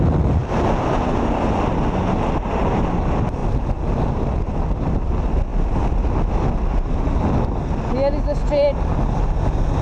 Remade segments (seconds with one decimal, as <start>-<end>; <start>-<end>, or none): none